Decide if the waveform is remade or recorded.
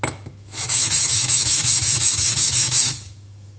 remade